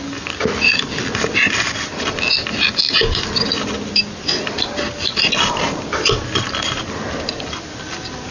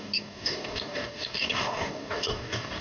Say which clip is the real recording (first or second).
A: first